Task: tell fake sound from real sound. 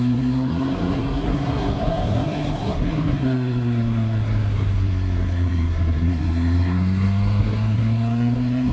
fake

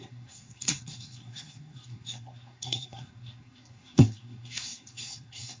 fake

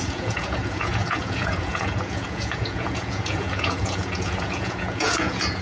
fake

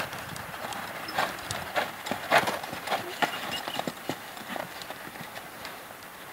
fake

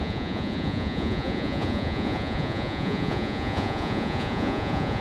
fake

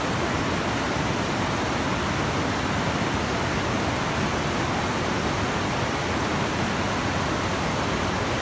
real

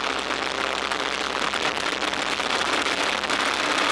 real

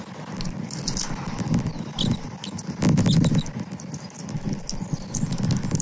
real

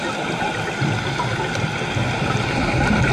real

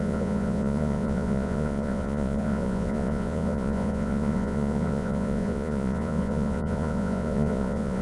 fake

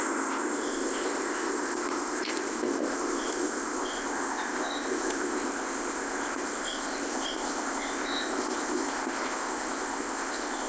fake